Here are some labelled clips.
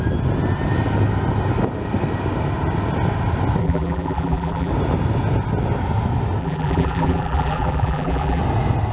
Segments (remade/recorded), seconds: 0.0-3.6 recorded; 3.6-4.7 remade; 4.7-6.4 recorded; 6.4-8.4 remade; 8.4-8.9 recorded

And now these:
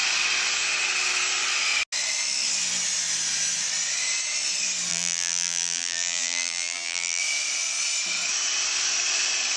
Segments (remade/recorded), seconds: 0.0-4.9 recorded; 4.9-7.2 remade; 7.2-9.6 recorded

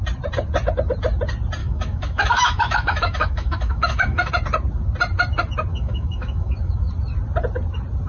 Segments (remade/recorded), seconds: 0.0-1.6 recorded; 1.6-4.3 remade; 4.3-5.7 recorded; 5.7-6.9 remade; 6.9-8.1 recorded

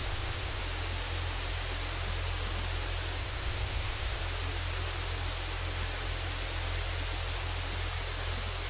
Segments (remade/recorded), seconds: 0.0-0.6 remade; 0.6-3.2 recorded; 3.2-4.2 remade; 4.2-8.7 recorded

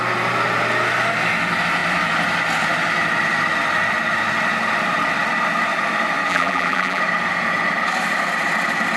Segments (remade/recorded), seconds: 0.0-6.3 recorded; 6.3-7.0 remade; 7.0-9.0 recorded

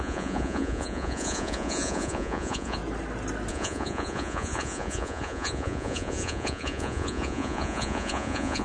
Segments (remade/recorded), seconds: 0.0-2.8 remade; 2.8-3.5 recorded; 3.5-8.6 remade